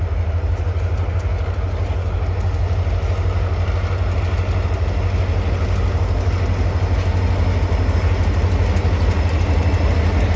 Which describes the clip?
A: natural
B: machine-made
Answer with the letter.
A